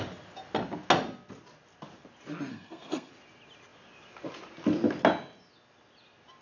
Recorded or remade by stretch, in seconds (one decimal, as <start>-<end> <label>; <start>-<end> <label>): 0.0-2.5 recorded; 2.5-3.1 remade; 3.1-6.4 recorded

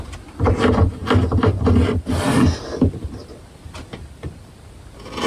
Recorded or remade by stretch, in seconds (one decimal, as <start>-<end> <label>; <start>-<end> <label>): 0.0-5.3 recorded

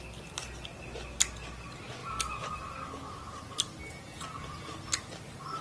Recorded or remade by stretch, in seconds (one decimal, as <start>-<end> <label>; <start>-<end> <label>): 0.0-5.6 recorded

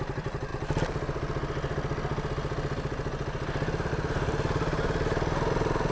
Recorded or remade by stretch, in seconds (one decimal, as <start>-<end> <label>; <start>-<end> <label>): 0.0-0.5 remade; 0.5-3.9 recorded; 3.9-5.9 remade

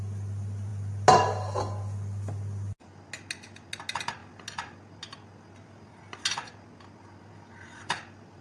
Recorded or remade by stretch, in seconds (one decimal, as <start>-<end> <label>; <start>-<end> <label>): 0.0-8.4 recorded

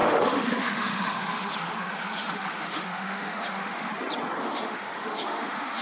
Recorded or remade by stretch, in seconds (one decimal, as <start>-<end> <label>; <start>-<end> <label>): 0.0-3.9 remade; 3.9-4.4 recorded; 4.4-5.8 remade

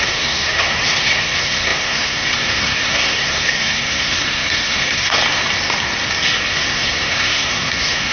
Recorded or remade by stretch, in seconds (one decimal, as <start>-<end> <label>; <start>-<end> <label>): 0.0-5.2 remade; 5.2-6.5 recorded; 6.5-8.1 remade